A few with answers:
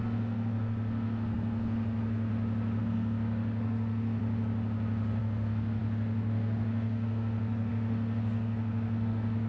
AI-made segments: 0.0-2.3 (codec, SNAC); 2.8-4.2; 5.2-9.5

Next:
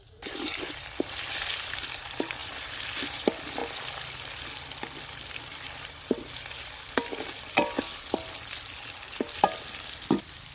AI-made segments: none

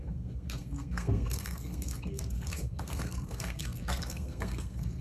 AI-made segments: 0.0-5.0 (codec, SNAC)

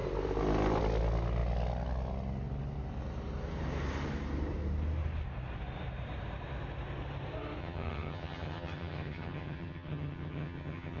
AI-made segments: 7.6-11.0 (vocoder, HiFi-GAN)

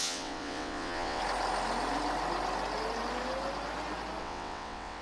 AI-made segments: 0.0-1.2 (vocoder, WaveNeXt); 4.2-5.0

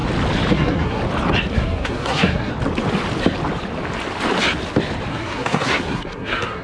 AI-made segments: 0.5-1.0 (codec, SNAC); 1.5-2.5; 5.1-6.6